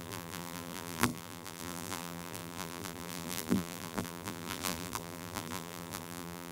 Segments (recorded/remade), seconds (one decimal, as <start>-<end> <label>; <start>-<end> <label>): 0.0-6.5 remade